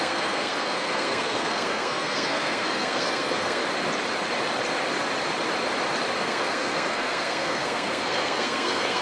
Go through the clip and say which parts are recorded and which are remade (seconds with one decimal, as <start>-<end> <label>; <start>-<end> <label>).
0.0-3.6 remade; 3.6-6.2 recorded; 6.2-9.0 remade